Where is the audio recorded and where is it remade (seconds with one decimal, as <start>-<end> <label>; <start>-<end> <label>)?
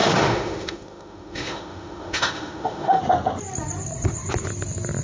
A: 0.0-3.0 remade; 3.0-5.0 recorded